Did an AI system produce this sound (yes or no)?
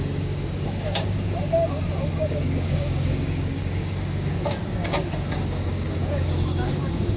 yes